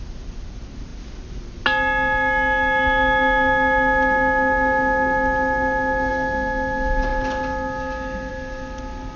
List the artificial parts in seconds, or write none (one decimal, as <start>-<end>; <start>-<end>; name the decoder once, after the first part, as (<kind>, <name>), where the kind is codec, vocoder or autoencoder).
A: none